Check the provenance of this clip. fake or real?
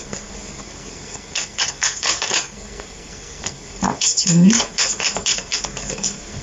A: fake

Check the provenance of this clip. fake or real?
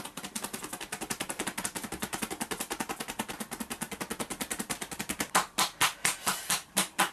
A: real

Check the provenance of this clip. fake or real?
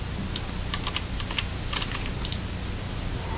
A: real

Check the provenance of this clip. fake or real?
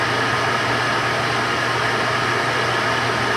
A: real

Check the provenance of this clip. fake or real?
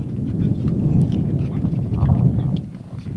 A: real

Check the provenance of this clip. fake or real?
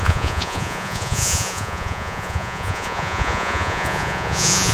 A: fake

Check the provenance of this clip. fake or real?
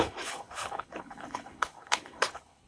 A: fake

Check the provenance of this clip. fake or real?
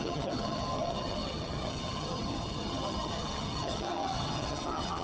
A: fake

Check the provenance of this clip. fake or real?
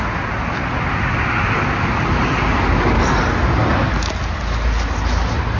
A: real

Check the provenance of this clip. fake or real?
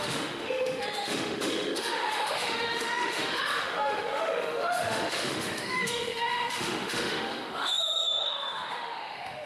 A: fake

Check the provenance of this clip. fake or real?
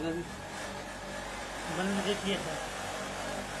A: real